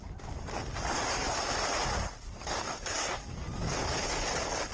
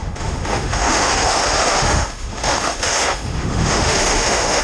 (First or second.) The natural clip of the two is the first